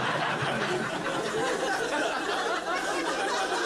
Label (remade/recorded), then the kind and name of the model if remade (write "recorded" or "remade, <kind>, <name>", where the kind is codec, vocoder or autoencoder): recorded